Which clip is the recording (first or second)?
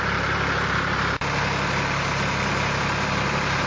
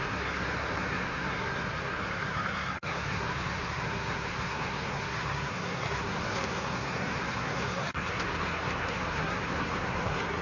first